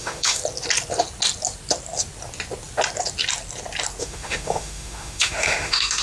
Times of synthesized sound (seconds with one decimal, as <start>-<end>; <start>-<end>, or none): 0.0-0.4; 4.0-6.0